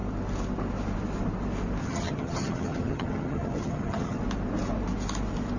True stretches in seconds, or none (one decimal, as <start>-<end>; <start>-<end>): 0.0-1.8; 4.2-5.6